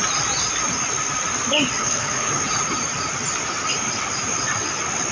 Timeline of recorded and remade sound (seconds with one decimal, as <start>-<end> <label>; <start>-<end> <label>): 0.0-1.8 recorded; 1.8-2.3 remade; 2.3-5.1 recorded